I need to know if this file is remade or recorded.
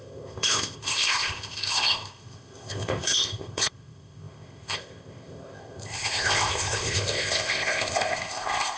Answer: remade